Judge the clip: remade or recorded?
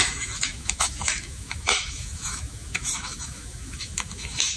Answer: remade